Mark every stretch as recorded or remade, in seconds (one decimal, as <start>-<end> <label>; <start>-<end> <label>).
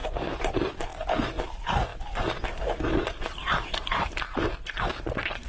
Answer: 0.0-0.5 remade; 0.5-5.5 recorded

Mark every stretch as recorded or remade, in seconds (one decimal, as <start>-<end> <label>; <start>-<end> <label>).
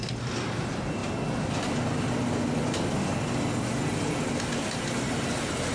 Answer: 0.0-1.0 remade; 1.0-4.4 recorded; 4.4-5.7 remade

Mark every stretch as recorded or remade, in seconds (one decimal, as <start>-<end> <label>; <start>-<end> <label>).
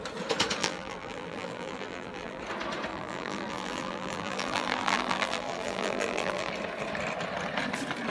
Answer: 0.0-0.6 recorded; 0.6-2.4 remade; 2.4-2.9 recorded; 2.9-6.5 remade; 6.5-8.1 recorded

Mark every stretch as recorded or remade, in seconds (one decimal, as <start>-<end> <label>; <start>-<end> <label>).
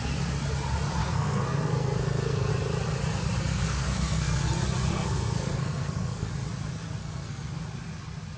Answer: 0.0-1.0 recorded; 1.0-2.5 remade; 2.5-3.5 recorded; 3.5-4.4 remade; 4.4-4.9 recorded; 4.9-6.3 remade; 6.3-7.0 recorded; 7.0-7.5 remade; 7.5-8.4 recorded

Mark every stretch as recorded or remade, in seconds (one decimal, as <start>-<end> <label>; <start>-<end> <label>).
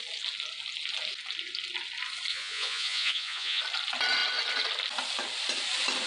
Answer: 0.0-2.3 recorded; 2.3-3.6 remade; 3.6-6.1 recorded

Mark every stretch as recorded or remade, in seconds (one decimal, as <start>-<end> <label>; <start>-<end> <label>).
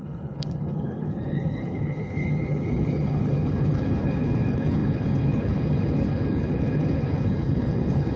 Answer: 0.0-8.2 remade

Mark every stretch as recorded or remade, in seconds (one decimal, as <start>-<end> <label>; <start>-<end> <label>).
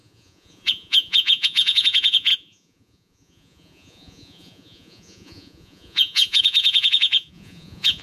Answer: 0.0-8.0 remade